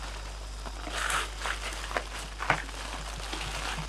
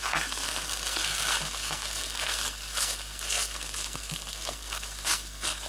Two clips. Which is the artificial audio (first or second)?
second